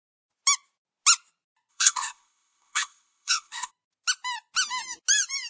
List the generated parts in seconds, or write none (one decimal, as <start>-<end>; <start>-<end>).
1.7-3.7